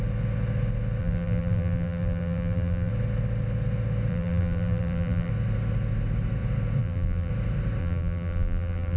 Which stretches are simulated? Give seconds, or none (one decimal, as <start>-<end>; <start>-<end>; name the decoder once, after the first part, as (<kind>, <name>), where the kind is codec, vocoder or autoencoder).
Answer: 1.0-2.9 (vocoder, BigVGAN v2); 4.1-5.3; 6.8-7.3; 7.8-9.0